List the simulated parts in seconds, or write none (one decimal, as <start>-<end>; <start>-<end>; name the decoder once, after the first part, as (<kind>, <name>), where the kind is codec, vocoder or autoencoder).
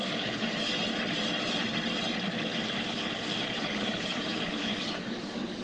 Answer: 0.0-0.7 (codec, DAC); 3.5-5.6